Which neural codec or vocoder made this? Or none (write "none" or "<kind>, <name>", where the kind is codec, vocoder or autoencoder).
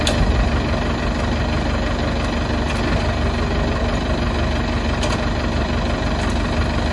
none